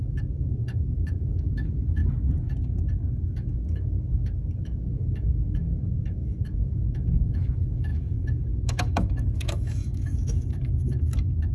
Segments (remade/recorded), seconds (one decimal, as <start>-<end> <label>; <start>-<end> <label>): 0.0-2.0 remade; 2.0-3.2 recorded; 3.2-11.5 remade